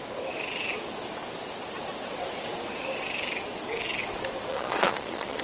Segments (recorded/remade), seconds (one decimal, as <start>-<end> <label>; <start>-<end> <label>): 0.0-4.5 recorded; 4.5-5.4 remade